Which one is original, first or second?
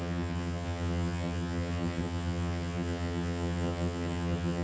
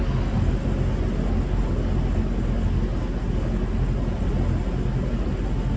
second